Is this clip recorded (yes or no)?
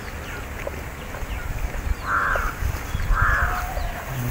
yes